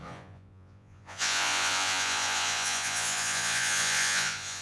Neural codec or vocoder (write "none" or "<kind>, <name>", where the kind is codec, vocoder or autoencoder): vocoder, Vocos